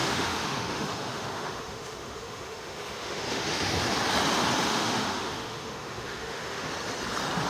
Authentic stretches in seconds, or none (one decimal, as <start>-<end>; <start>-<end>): 3.7-4.7; 6.7-7.5